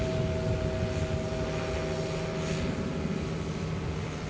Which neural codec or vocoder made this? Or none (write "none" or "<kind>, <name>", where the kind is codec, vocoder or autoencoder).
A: none